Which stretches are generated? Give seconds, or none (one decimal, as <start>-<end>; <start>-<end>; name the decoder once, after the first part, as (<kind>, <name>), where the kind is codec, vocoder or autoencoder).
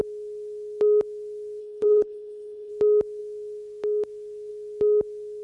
1.6-2.7 (codec, HILCodec)